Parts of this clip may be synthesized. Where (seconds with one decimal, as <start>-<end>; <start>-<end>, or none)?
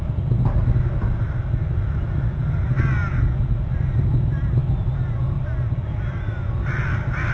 none